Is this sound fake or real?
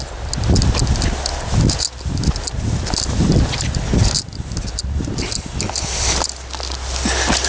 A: real